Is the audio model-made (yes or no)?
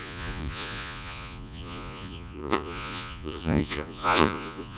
yes